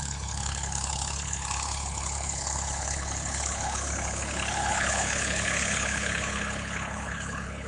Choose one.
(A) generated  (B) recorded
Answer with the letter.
A